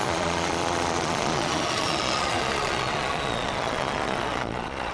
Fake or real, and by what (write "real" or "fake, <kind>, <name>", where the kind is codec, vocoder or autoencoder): fake, vocoder, Vocos